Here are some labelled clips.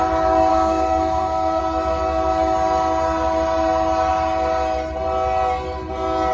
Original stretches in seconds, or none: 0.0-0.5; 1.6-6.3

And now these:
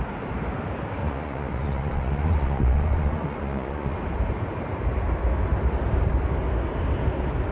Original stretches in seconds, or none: 0.0-1.0; 4.0-7.5